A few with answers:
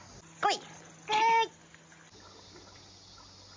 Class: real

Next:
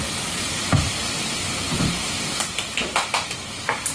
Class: real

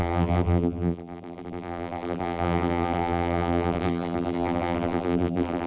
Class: fake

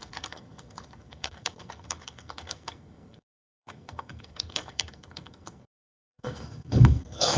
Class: fake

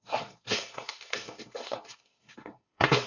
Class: fake